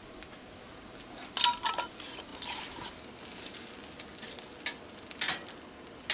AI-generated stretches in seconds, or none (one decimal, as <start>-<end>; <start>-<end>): none